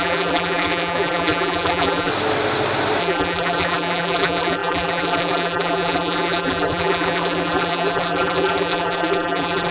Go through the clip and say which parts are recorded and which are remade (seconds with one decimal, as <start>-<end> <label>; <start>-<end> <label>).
0.0-2.1 remade; 2.1-3.0 recorded; 3.0-9.7 remade